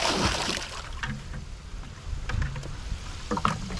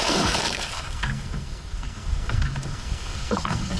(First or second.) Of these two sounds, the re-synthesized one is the second